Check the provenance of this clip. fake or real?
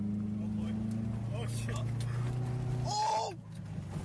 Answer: real